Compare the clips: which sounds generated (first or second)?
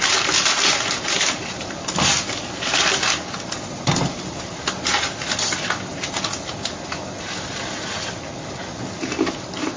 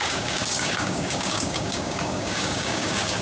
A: second